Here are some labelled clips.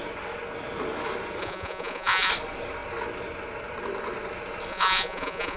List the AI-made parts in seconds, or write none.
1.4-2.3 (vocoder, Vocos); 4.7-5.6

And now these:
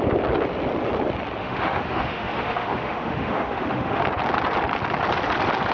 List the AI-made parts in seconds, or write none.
1.4-4.0 (autoencoder, DAC-VAE)

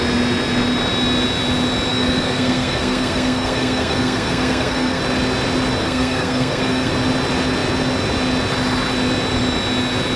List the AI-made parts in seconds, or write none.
1.9-5.0 (codec, SNAC); 5.8-6.9

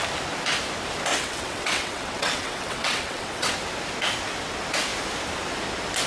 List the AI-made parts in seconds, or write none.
1.1-3.5 (vocoder, WaveNeXt)

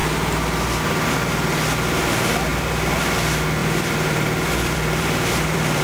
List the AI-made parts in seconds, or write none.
2.5-3.0 (vocoder, BigVGAN v2); 3.6-5.8

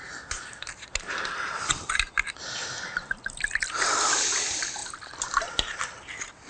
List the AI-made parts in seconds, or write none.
none

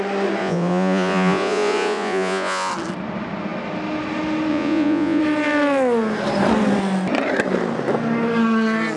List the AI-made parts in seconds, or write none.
0.4-2.7 (vocoder, Vocos); 4.5-5.2

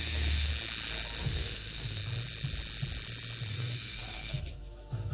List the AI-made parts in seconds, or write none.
0.0-0.5 (autoencoder, DAC-VAE); 1.2-2.0; 3.5-5.1